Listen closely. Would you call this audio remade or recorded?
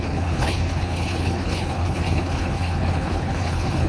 remade